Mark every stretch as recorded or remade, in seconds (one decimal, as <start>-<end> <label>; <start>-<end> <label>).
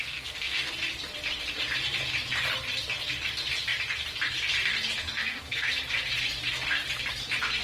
0.0-0.7 remade; 0.7-5.0 recorded; 5.0-5.7 remade; 5.7-7.6 recorded